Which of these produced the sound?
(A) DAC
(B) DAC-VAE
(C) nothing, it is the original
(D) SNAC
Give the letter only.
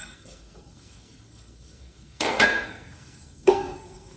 D